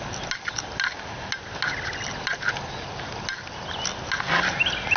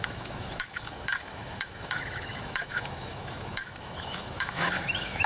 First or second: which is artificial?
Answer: second